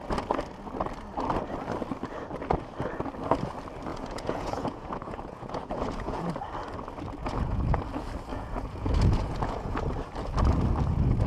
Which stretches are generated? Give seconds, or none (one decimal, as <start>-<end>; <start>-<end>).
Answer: 3.9-6.3; 7.2-7.8; 8.3-9.8